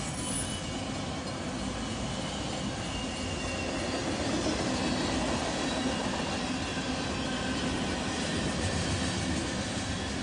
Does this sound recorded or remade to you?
recorded